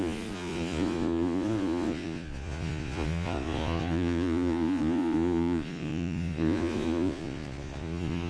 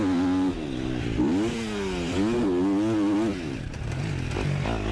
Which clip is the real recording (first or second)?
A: second